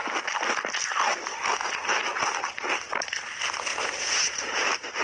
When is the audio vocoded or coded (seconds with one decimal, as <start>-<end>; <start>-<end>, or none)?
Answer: 3.7-4.6